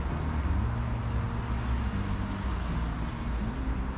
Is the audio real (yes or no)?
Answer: yes